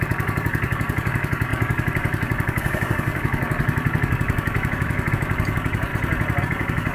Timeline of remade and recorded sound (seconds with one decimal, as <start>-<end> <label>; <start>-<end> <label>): 0.0-5.9 remade; 5.9-6.4 recorded; 6.4-6.9 remade